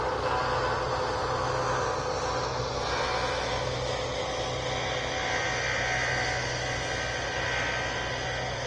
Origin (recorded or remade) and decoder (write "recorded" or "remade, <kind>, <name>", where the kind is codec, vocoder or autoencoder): recorded